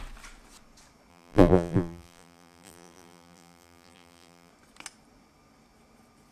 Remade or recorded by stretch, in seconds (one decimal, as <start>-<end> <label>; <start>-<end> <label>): 0.0-1.1 recorded; 1.1-4.5 remade; 4.5-6.3 recorded